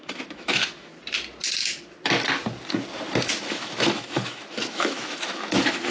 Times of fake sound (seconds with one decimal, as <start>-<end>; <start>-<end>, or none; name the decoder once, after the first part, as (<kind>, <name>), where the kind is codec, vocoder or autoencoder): 0.0-0.9 (autoencoder, DAC-VAE); 3.2-5.9